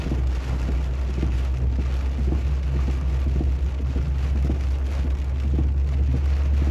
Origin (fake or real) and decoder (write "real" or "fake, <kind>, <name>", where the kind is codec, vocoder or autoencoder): real